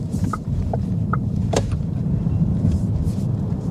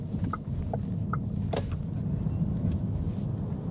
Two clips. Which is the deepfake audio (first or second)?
first